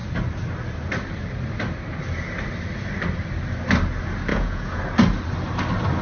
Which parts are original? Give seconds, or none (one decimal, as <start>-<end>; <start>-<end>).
0.0-4.3; 4.8-6.0